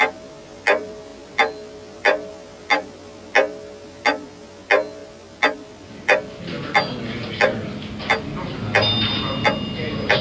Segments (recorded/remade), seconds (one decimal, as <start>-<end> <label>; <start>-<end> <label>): 0.0-1.1 recorded; 1.1-2.3 remade; 2.3-5.0 recorded; 5.0-6.4 remade; 6.4-10.2 recorded